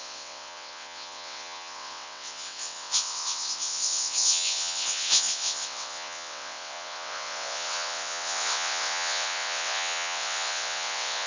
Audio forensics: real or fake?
fake